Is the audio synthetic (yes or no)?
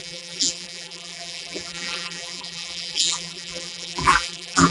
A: yes